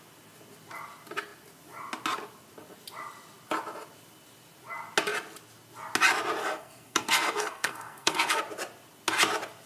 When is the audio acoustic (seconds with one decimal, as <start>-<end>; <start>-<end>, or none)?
0.0-6.4; 8.4-9.7

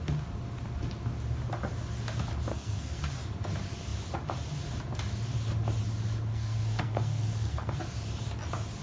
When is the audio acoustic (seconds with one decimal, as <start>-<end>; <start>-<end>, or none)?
0.0-2.5; 3.1-6.3; 7.8-8.8